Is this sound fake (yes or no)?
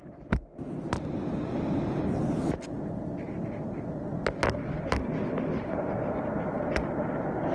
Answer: no